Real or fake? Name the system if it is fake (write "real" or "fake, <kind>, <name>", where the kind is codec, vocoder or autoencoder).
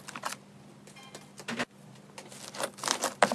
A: real